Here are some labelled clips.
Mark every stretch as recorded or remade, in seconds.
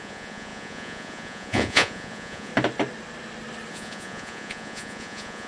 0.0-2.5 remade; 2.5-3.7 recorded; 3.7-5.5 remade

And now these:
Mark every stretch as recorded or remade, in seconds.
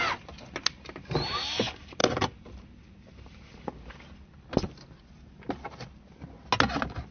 0.0-7.1 recorded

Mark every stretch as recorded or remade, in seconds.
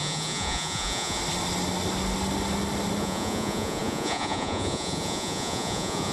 0.0-1.2 remade; 1.2-3.0 recorded; 3.0-6.1 remade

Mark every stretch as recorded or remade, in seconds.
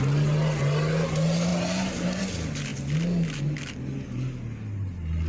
0.0-5.3 recorded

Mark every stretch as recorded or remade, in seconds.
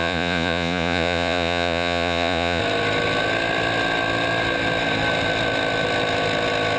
0.0-2.6 remade; 2.6-6.8 recorded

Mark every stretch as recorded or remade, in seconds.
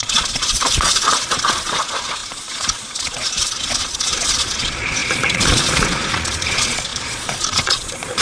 0.0-8.2 remade